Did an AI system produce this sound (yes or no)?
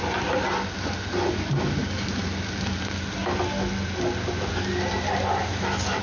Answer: no